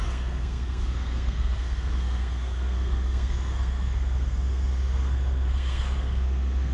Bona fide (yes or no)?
no